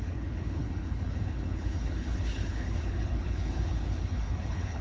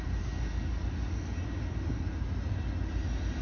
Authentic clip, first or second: second